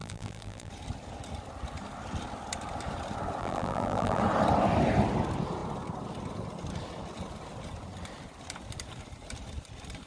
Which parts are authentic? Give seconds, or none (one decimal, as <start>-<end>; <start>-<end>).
0.7-3.4; 4.2-10.1